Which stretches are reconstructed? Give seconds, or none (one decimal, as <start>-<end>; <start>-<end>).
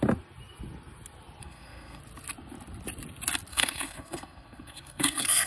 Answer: 1.4-2.0; 3.5-5.5